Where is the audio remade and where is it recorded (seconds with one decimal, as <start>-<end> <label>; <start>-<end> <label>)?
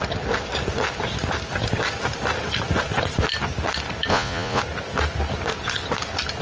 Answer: 0.0-4.1 recorded; 4.1-4.6 remade; 4.6-6.4 recorded